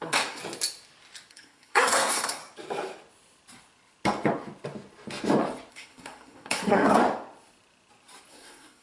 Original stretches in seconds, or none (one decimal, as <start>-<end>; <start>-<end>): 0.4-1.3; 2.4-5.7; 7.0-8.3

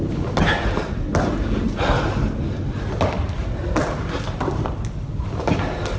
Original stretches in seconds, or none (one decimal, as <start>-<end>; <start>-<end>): 0.0-6.0

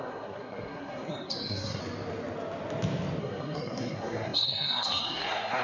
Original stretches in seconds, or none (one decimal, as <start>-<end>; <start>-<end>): 1.8-3.2

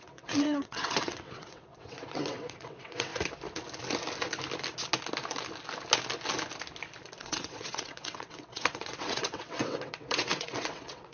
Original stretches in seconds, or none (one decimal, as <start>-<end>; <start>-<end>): 3.1-7.2

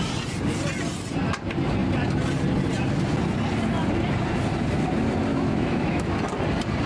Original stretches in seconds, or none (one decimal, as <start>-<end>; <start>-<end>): 0.0-5.3; 6.0-6.9

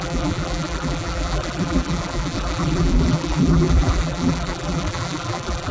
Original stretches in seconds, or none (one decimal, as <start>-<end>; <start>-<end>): none

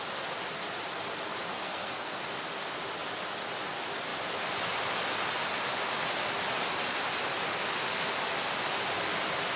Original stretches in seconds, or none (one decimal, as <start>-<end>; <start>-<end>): 0.0-1.5; 2.2-9.6

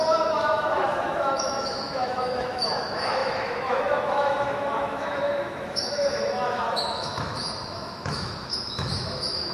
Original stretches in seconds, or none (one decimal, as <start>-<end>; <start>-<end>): none